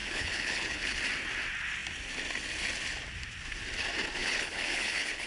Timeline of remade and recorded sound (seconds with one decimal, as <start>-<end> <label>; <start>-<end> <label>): 0.0-1.0 remade; 1.0-4.2 recorded; 4.2-5.3 remade